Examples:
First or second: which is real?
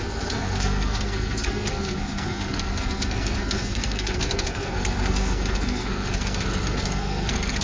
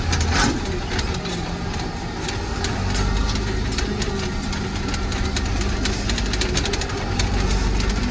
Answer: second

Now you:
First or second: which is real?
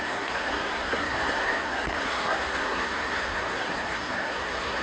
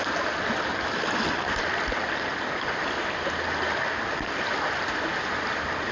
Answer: second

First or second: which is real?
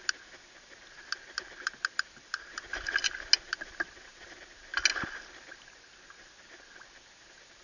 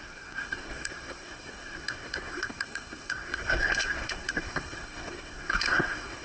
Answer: first